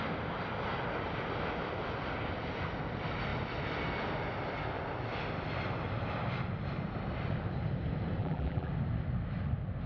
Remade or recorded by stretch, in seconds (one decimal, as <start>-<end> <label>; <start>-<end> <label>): 0.0-8.2 recorded; 8.2-8.7 remade; 8.7-9.9 recorded